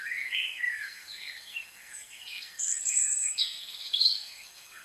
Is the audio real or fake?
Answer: fake